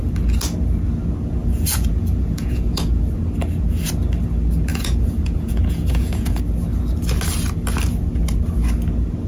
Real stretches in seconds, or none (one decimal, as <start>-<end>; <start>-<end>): 0.0-1.4; 3.0-4.7; 6.4-9.3